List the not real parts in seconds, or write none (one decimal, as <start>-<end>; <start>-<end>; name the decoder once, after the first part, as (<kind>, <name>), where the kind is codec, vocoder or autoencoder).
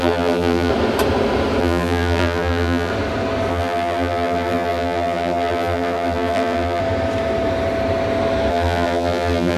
0.0-0.7 (vocoder, BigVGAN v2); 1.6-2.9; 3.5-6.8; 8.5-9.6